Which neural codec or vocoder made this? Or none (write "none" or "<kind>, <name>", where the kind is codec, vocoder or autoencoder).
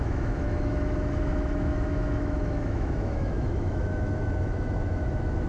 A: autoencoder, DAC-VAE